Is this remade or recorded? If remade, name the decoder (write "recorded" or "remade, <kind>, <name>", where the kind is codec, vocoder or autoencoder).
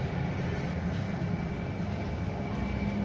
recorded